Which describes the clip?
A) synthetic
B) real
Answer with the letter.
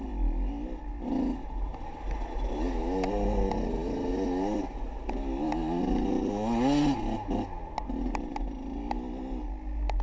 B